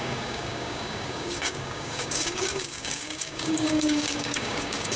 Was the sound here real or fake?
fake